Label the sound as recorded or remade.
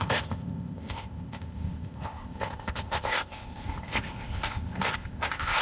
remade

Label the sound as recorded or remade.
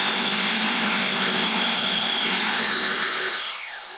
remade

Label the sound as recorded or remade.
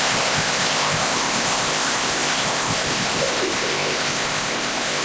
remade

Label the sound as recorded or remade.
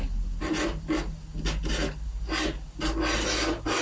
recorded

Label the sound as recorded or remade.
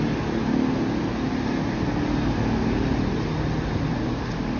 recorded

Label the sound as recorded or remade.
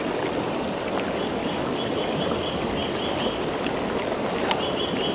recorded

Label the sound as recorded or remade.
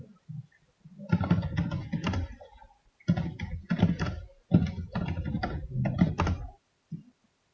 recorded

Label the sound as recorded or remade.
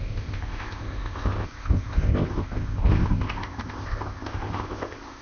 remade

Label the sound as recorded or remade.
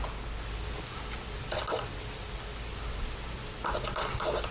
recorded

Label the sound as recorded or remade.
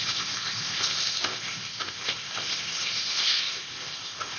remade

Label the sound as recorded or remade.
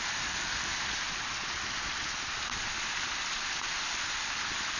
recorded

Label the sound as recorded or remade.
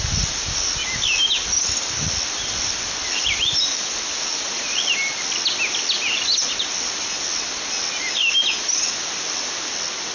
recorded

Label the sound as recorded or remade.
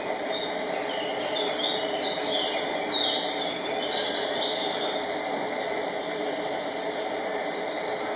recorded